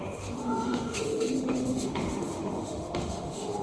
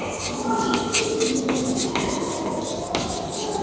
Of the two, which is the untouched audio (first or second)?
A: second